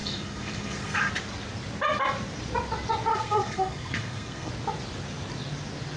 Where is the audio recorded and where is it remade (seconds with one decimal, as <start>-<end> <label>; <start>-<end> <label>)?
0.0-1.1 remade; 1.1-3.1 recorded; 3.1-4.5 remade; 4.5-6.0 recorded